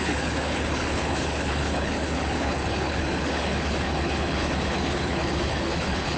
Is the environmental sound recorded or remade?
remade